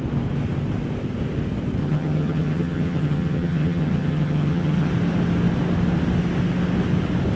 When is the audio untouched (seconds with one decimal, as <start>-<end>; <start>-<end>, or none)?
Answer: 0.0-1.8; 4.9-7.4